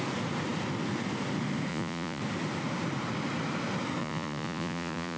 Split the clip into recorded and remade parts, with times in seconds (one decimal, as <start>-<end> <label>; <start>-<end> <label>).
0.0-1.7 recorded; 1.7-2.2 remade; 2.2-4.0 recorded; 4.0-5.2 remade